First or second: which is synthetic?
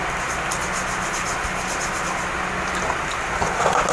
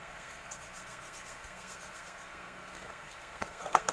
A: second